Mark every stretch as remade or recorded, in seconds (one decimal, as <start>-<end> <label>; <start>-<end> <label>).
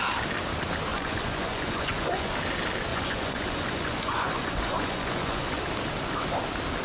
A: 0.0-0.9 recorded; 0.9-2.3 remade; 2.3-2.9 recorded; 2.9-5.6 remade; 5.6-6.8 recorded